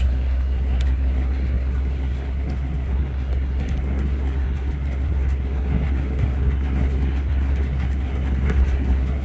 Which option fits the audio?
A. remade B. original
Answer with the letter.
A